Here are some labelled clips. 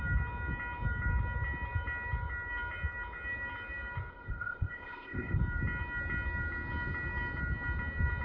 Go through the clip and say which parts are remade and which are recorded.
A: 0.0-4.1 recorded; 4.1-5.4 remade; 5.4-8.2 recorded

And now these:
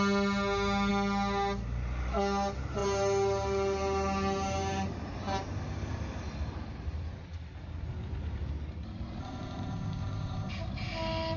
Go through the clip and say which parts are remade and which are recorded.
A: 0.0-9.2 recorded; 9.2-10.5 remade; 10.5-11.4 recorded

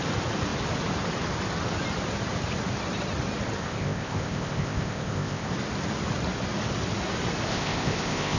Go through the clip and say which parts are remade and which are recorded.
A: 0.0-3.6 recorded; 3.6-5.5 remade; 5.5-7.5 recorded; 7.5-8.4 remade

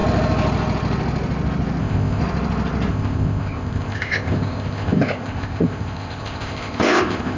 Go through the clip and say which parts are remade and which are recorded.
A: 0.0-1.8 recorded; 1.8-2.2 remade; 2.2-2.9 recorded; 2.9-7.4 remade